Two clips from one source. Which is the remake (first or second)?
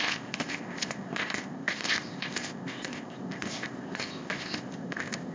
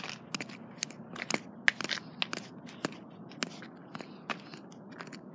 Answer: first